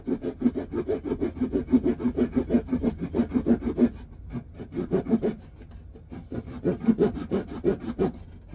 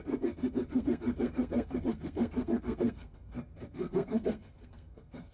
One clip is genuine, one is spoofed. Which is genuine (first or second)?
first